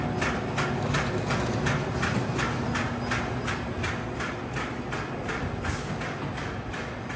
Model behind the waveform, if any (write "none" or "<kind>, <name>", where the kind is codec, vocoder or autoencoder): none